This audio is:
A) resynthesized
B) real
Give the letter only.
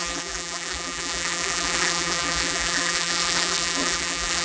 A